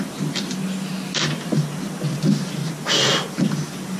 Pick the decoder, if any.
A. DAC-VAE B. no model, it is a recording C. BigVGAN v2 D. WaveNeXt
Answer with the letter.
B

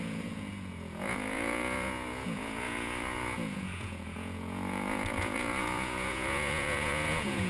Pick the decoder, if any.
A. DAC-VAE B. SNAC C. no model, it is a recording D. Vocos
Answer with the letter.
D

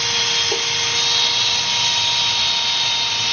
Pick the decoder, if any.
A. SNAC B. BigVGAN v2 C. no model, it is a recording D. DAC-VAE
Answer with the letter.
C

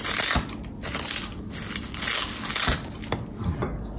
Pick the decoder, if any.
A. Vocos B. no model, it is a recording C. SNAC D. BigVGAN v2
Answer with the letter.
B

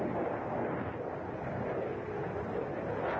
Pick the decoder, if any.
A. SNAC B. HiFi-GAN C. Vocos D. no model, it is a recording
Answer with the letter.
D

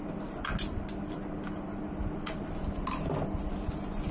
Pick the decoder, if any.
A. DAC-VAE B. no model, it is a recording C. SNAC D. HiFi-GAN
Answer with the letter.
B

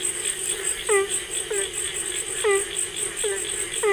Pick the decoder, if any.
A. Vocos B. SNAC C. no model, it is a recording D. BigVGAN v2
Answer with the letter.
C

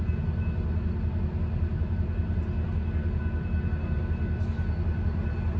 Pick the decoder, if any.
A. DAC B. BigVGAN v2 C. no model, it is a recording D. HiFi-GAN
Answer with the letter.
C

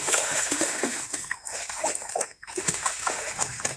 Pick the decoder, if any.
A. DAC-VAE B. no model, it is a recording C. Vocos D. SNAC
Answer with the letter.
A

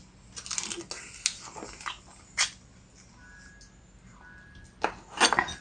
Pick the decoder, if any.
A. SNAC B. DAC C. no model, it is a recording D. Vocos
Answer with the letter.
C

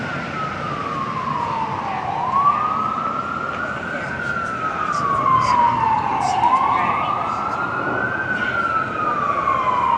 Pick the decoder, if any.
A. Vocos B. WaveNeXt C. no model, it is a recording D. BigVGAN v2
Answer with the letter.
C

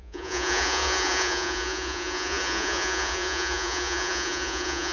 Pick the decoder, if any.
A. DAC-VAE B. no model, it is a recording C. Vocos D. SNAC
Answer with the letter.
C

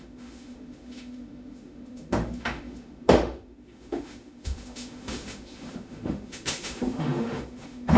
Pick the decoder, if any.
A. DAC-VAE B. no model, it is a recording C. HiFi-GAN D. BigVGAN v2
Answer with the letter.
A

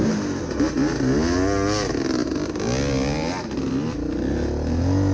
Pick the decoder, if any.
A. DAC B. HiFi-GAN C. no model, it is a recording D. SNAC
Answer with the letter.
C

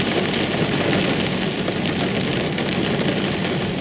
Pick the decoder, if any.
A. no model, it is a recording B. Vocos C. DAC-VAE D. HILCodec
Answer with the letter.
A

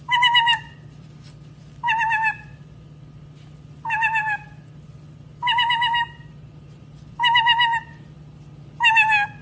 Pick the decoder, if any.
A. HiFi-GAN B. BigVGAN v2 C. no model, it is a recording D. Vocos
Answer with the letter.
C